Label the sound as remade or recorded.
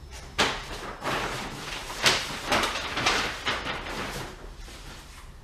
remade